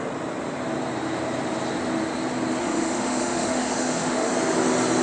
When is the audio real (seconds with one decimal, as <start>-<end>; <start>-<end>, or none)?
0.0-2.6; 4.3-5.0